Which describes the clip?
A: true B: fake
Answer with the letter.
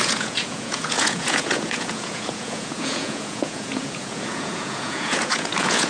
B